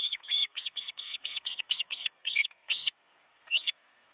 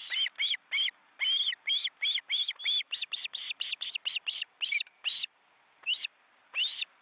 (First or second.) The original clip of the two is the second